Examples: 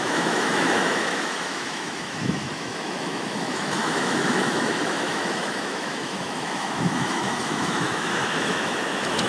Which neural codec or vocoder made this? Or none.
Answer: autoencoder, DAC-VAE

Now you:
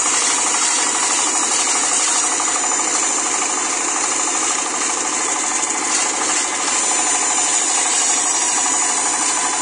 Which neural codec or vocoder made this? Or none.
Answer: none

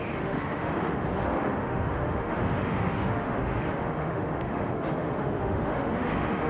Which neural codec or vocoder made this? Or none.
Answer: autoencoder, DAC-VAE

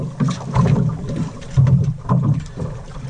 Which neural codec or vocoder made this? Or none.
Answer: vocoder, BigVGAN v2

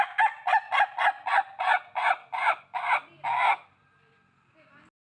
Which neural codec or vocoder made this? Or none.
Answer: none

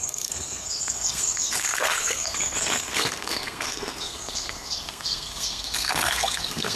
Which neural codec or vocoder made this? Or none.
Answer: codec, SNAC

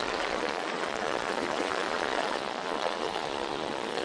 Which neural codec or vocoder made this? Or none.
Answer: vocoder, Vocos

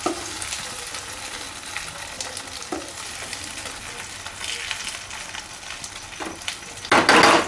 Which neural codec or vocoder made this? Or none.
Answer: none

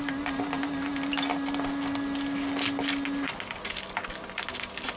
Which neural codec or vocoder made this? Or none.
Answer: none